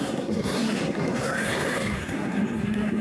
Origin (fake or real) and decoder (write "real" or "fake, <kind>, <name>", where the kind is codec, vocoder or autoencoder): fake, codec, SNAC